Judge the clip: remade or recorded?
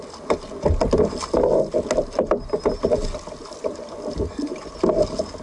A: recorded